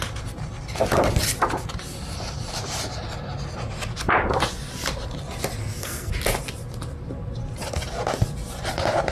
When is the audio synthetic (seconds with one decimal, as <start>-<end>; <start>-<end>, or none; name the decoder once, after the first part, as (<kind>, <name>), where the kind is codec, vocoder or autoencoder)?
5.6-6.1 (codec, SNAC)

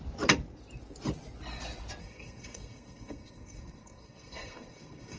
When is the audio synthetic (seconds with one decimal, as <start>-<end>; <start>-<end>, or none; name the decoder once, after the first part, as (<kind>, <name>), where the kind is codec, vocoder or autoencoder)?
2.0-5.2 (codec, SNAC)

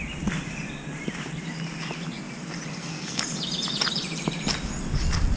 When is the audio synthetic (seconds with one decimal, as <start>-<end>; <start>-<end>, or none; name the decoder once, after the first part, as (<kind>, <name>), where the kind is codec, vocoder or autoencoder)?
2.7-3.2 (codec, SNAC)

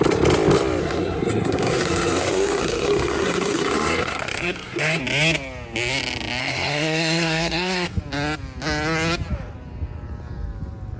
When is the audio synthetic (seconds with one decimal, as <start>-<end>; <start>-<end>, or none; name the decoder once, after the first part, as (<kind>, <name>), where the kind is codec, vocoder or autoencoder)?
0.8-5.0 (codec, SNAC); 6.4-8.0

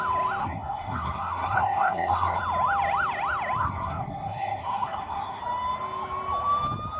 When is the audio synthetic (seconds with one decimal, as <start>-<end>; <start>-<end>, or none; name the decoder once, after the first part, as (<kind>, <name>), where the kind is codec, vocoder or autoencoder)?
0.4-2.4 (codec, SNAC); 3.6-5.4

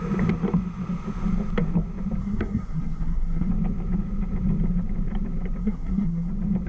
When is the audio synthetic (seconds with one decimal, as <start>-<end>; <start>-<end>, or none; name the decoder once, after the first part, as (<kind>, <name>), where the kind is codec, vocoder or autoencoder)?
2.2-3.5 (codec, SNAC); 5.6-6.3

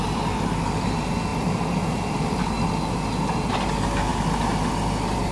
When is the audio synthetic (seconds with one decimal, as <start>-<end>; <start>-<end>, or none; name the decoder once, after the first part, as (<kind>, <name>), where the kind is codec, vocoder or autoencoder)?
none

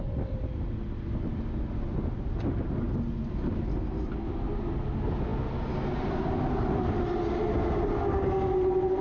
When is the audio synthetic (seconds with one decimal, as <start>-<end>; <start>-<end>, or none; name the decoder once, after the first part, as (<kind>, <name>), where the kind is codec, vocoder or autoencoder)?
none